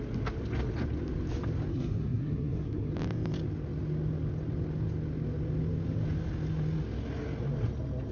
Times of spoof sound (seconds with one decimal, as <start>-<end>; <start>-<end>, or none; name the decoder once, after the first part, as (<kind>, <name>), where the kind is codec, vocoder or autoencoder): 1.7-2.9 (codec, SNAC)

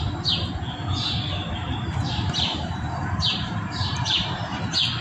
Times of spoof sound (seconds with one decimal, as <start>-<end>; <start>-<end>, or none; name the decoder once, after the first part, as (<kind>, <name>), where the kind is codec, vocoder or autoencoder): 1.6-4.6 (vocoder, BigVGAN v2)

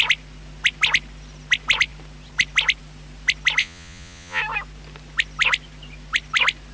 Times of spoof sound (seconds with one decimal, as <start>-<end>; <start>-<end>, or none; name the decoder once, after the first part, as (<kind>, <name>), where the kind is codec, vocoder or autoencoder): 3.6-4.4 (vocoder, Vocos)

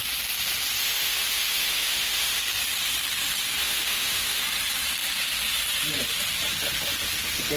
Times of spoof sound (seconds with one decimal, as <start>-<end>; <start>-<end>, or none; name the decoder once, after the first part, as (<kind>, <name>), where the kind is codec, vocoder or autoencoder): 0.8-2.4 (autoencoder, DAC-VAE); 3.6-4.4

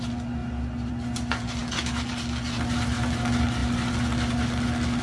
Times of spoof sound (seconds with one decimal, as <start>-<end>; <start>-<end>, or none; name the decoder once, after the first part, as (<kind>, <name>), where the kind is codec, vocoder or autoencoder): none